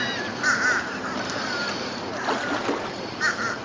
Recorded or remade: recorded